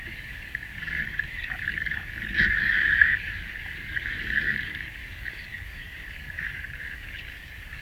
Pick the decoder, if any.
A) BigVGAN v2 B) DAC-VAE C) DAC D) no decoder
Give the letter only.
C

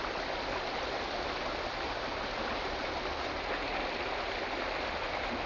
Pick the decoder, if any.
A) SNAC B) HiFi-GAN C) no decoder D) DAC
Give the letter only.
C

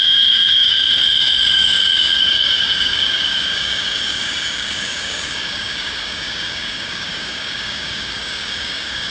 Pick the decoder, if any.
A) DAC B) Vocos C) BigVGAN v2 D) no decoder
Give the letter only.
A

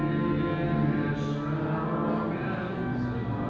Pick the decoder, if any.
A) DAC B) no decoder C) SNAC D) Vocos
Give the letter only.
B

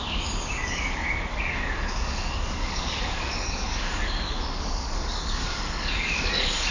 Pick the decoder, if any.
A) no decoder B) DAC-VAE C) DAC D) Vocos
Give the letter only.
C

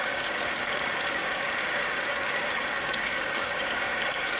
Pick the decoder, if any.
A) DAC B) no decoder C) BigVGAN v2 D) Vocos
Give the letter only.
A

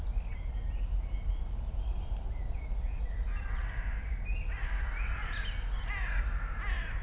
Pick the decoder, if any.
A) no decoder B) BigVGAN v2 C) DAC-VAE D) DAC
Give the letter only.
A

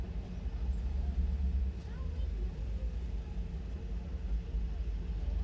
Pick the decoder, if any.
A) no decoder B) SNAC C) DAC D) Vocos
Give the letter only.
A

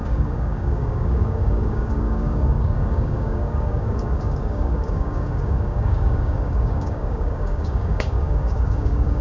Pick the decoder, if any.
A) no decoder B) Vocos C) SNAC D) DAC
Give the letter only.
D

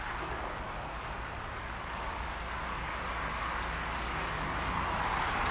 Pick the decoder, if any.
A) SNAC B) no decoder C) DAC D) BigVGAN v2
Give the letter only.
C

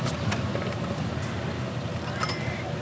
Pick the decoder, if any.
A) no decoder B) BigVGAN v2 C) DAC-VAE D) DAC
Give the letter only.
A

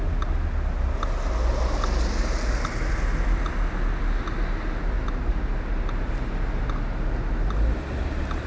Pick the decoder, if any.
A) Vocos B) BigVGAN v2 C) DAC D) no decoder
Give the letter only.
D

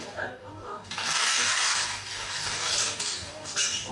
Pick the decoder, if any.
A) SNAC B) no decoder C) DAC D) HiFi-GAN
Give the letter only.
C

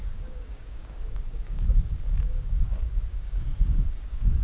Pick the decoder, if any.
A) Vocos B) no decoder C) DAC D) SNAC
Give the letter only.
C